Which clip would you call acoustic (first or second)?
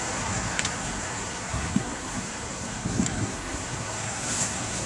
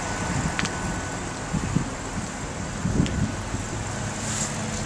second